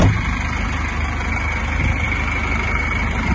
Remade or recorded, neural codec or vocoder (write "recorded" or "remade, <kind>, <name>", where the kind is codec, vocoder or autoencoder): recorded